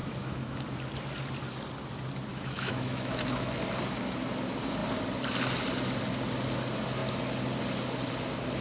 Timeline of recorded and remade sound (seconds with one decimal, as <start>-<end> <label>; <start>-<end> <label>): 0.0-0.6 remade; 0.6-2.3 recorded; 2.3-3.5 remade; 3.5-8.6 recorded